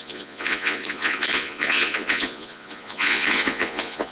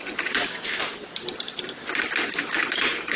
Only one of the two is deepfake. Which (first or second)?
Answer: first